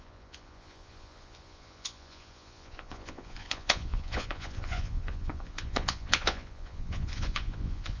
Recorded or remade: remade